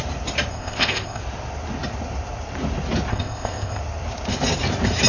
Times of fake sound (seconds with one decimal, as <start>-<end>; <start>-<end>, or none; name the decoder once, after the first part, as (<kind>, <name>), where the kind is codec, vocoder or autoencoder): 0.5-1.2 (codec, ZipCodec); 3.1-3.8